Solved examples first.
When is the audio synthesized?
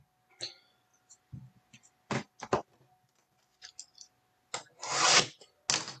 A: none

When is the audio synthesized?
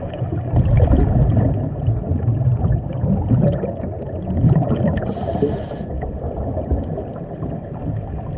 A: 0.0-0.5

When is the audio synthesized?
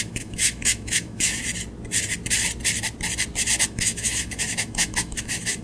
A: 0.0-1.4; 3.7-5.6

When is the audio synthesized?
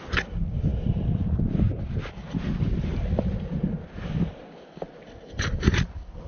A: none